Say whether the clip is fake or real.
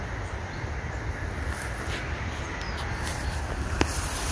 real